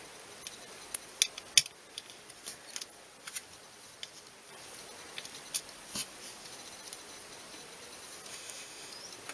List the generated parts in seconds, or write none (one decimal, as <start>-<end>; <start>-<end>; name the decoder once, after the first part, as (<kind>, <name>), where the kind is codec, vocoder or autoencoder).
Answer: 8.3-8.9 (autoencoder, DAC-VAE)